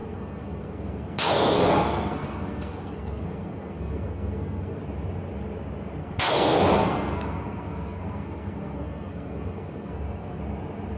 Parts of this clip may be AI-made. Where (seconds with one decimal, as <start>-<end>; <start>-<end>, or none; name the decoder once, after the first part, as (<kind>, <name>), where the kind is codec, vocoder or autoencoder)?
0.0-4.8 (codec, SNAC); 6.0-10.4